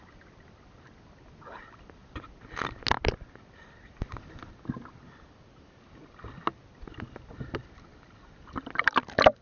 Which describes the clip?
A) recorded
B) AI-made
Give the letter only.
A